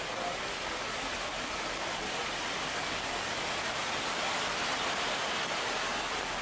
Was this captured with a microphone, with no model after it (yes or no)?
yes